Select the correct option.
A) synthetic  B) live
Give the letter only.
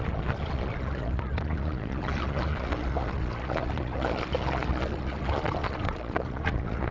A